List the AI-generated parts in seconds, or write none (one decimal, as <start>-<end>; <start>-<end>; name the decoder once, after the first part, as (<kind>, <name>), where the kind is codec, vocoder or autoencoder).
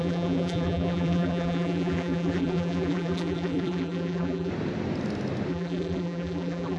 0.0-4.5 (vocoder, BigVGAN v2); 5.5-6.8